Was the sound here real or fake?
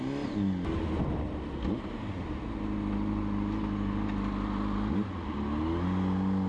real